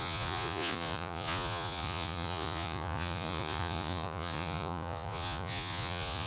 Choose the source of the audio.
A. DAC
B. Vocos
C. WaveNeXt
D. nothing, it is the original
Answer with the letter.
B